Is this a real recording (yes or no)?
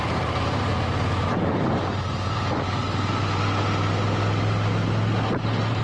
yes